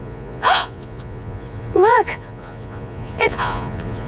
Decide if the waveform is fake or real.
fake